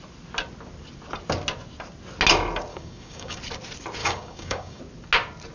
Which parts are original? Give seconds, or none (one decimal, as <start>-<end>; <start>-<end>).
0.0-2.7; 3.4-4.0; 4.8-5.5